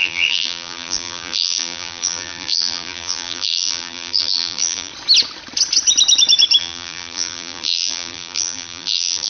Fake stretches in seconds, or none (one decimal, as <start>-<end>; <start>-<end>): 0.0-4.9; 6.6-9.3